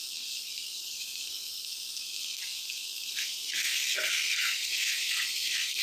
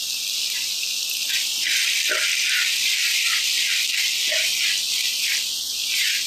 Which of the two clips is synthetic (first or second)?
first